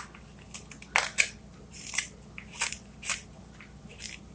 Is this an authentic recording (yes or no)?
yes